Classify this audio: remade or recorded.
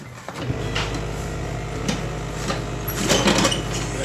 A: recorded